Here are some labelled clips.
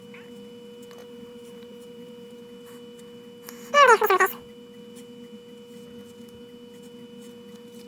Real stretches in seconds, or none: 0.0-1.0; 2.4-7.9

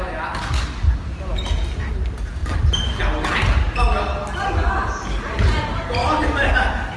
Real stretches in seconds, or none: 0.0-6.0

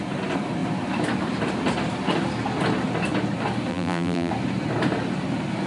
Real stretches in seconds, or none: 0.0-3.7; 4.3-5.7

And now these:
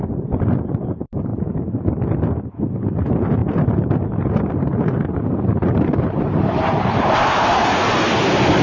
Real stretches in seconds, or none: 0.0-3.4; 7.7-8.6